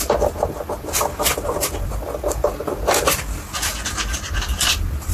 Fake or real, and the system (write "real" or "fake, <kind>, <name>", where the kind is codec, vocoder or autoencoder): real